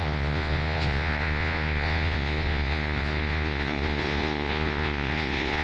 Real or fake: fake